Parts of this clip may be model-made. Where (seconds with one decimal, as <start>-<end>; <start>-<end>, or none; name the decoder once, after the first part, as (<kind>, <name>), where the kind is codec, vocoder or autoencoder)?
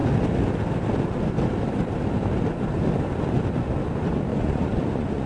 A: 4.3-5.3 (vocoder, Vocos)